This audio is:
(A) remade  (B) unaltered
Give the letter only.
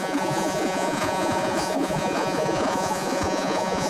A